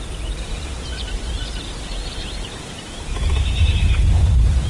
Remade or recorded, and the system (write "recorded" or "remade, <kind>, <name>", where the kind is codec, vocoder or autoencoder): remade, vocoder, BigVGAN v2